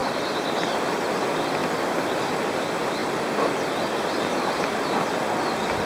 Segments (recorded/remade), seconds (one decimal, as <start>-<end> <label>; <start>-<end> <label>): 0.0-0.8 remade; 0.8-1.6 recorded; 1.6-2.5 remade; 2.5-3.0 recorded; 3.0-5.9 remade